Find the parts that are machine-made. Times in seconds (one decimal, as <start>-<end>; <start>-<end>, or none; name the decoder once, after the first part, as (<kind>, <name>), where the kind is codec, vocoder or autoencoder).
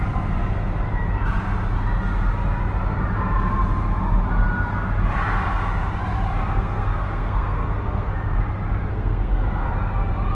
6.4-8.1 (codec, SNAC); 8.9-9.7